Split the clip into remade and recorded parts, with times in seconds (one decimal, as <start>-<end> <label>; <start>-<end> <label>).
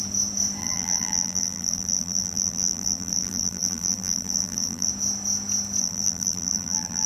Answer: 0.0-0.6 recorded; 0.6-4.9 remade; 4.9-5.8 recorded; 5.8-7.1 remade